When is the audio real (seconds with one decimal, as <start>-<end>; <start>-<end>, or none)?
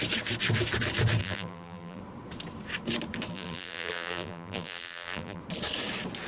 0.0-1.2; 2.0-3.3; 5.4-6.3